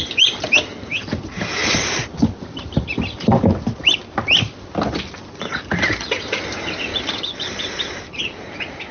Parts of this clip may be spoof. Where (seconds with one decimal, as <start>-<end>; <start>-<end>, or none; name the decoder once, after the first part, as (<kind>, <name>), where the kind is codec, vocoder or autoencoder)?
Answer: none